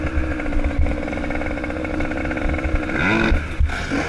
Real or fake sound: real